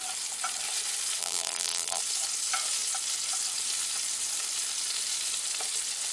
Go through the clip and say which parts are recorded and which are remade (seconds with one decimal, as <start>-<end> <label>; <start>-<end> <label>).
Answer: 0.0-1.2 recorded; 1.2-2.0 remade; 2.0-6.1 recorded